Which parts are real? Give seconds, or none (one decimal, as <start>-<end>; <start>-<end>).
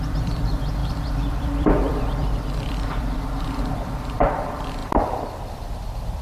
4.8-5.6